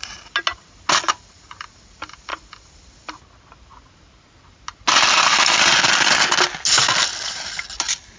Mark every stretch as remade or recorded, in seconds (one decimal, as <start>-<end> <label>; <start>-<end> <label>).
0.0-8.2 recorded